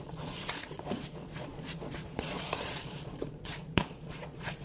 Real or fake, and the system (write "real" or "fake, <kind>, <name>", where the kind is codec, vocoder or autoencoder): fake, vocoder, Vocos